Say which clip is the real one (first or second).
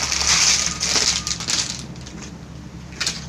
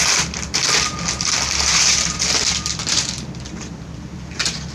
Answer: first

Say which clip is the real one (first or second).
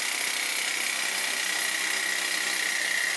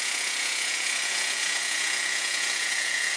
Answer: first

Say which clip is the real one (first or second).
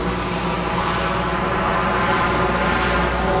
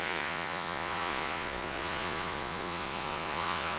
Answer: first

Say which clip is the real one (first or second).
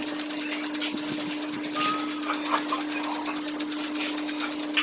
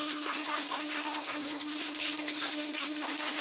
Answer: first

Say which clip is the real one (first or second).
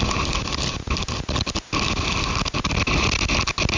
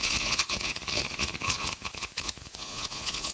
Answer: first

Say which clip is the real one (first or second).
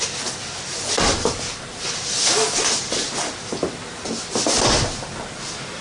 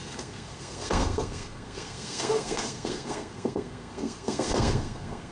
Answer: first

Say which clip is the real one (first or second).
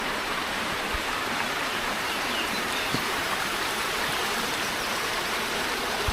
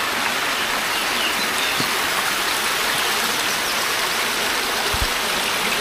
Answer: second